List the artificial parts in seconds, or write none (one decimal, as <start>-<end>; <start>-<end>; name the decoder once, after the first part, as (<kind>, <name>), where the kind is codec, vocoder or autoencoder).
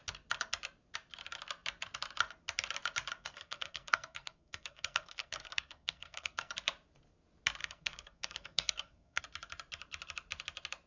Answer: 3.2-6.5 (codec, SNAC); 7.6-9.2